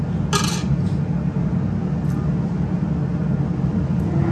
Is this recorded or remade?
recorded